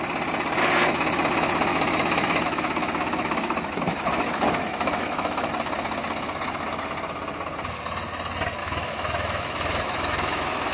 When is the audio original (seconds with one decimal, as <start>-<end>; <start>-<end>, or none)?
0.0-1.7; 5.5-8.6